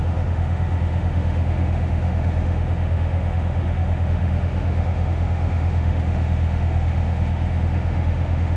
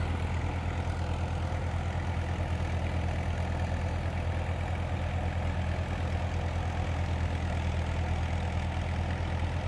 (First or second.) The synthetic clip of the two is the first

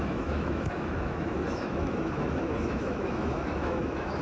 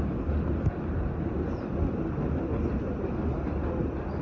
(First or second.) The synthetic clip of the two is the first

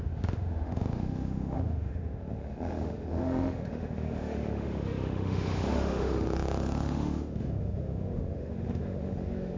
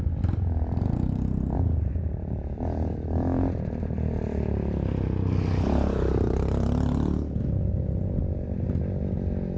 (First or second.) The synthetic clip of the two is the first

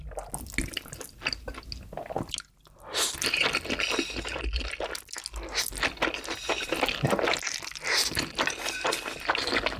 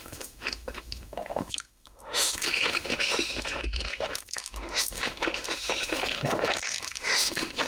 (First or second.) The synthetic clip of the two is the second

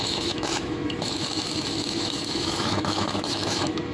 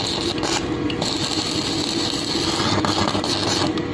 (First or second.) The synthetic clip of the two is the first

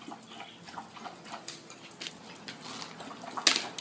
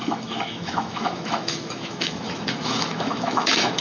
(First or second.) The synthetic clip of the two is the second